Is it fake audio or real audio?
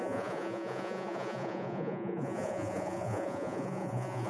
fake